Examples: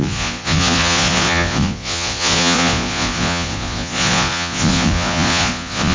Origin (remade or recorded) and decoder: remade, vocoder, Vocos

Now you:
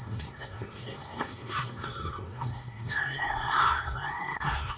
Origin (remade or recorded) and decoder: remade, codec, SNAC